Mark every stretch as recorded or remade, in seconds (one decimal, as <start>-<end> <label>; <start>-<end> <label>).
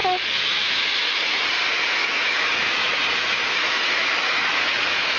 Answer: 0.0-1.4 remade; 1.4-2.0 recorded; 2.0-5.2 remade